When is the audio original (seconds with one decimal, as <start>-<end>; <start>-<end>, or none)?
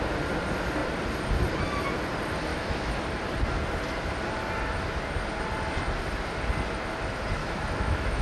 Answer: 0.0-2.5; 3.0-7.4